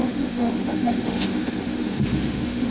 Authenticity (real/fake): fake